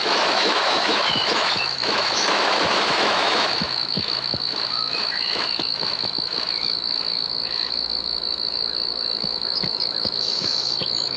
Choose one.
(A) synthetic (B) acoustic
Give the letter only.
A